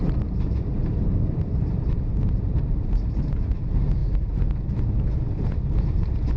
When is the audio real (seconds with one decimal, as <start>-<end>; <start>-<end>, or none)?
none